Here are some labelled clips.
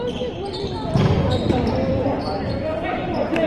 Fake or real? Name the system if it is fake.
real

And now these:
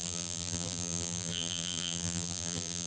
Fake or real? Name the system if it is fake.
fake, vocoder, BigVGAN v2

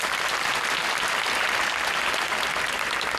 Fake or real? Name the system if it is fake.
real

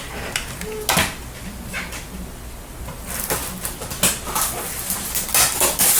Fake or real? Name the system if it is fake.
real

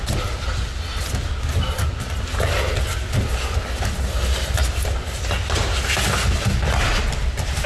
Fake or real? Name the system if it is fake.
real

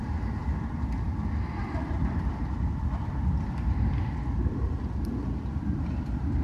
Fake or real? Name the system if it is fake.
fake, vocoder, BigVGAN v2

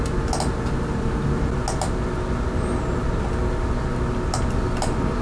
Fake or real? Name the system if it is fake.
real